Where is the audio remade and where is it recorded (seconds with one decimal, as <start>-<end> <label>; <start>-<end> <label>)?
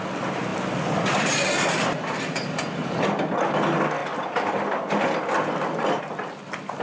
0.0-6.8 recorded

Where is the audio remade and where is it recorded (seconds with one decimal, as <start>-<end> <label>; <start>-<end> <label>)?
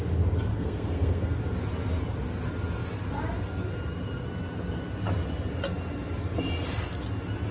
0.0-0.5 recorded; 0.5-1.4 remade; 1.4-7.5 recorded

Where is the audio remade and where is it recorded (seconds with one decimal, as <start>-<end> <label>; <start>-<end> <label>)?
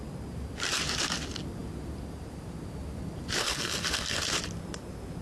0.0-3.4 recorded; 3.4-4.2 remade; 4.2-5.2 recorded